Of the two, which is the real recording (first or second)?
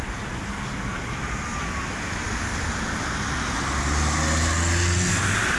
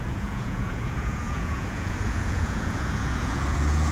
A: first